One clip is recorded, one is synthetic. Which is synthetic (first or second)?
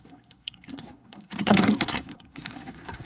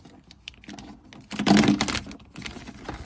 first